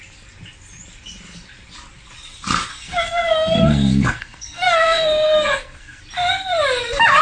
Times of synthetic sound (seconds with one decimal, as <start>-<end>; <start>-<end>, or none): 2.7-6.0